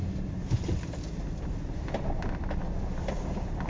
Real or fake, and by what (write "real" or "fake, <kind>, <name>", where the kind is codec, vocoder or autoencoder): real